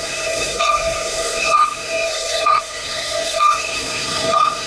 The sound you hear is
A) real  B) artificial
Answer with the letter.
B